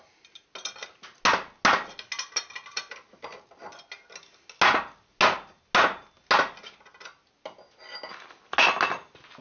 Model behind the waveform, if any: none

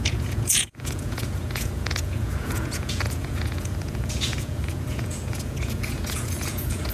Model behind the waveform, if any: vocoder, Vocos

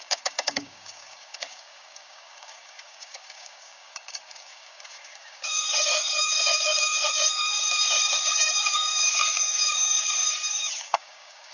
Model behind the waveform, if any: codec, DAC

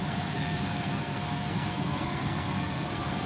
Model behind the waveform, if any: codec, SNAC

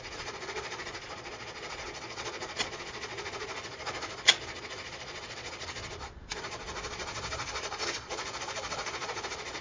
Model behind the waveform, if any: vocoder, Vocos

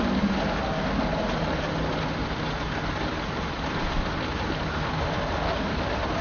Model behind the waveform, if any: none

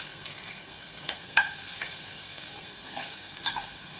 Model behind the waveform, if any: codec, SNAC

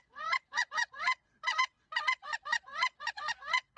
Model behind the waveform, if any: vocoder, Vocos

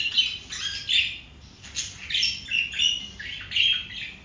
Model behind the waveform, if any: none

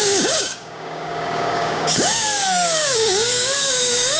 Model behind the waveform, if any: codec, DAC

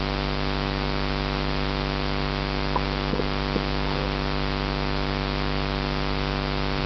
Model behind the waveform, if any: none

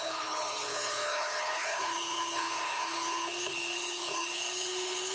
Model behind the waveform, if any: codec, HILCodec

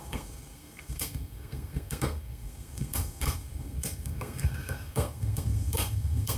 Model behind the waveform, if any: codec, SNAC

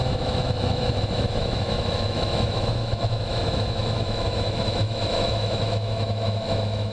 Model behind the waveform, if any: autoencoder, DAC-VAE